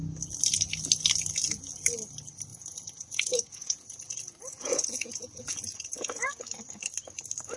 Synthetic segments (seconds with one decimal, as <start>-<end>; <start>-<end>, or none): 2.5-6.4

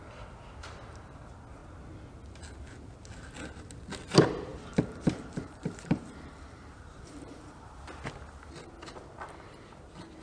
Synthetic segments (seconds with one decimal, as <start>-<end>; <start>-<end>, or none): 4.5-7.7

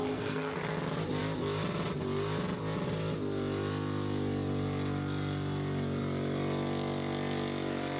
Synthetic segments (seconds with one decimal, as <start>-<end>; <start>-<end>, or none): 0.0-0.6

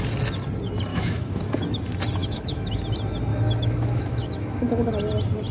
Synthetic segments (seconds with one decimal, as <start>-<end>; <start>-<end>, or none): 0.9-1.4; 2.2-2.7; 3.3-4.9

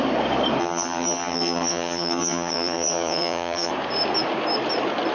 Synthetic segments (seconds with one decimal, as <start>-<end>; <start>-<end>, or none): 0.6-3.7

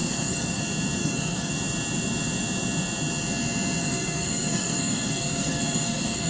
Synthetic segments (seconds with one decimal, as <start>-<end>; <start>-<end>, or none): 0.0-0.6; 1.0-1.5; 3.8-6.3